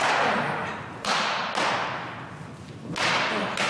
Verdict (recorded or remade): recorded